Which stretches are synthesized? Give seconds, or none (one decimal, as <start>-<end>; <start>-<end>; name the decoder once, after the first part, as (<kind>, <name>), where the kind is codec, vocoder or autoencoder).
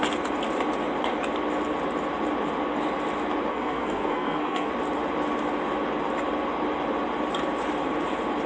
3.5-4.7 (codec, SNAC)